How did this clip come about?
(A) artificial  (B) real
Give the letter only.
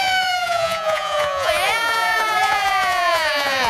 A